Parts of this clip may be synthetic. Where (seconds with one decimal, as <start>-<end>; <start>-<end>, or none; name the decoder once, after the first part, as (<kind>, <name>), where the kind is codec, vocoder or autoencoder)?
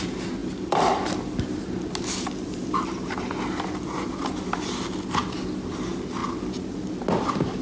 none